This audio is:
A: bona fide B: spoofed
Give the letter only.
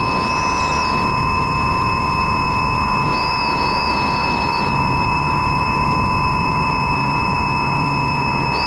B